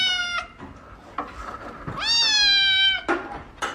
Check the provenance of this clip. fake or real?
real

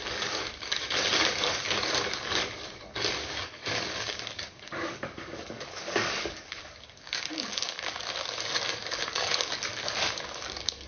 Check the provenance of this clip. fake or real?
fake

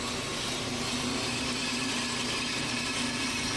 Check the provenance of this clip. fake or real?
real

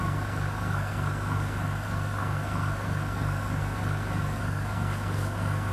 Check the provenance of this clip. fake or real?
fake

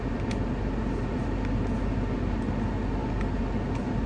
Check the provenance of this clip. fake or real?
real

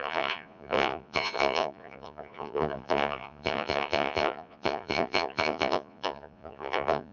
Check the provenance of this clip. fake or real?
fake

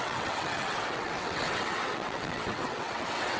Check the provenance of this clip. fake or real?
fake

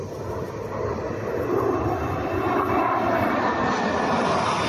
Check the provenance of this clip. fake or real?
real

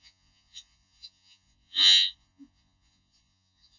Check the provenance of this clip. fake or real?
fake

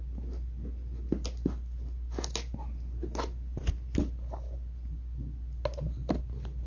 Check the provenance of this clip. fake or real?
real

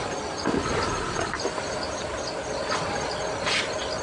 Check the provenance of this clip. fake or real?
real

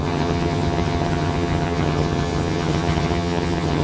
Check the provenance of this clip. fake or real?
fake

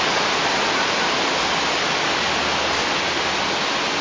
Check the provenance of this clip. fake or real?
real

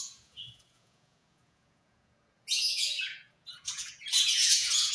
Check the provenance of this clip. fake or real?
fake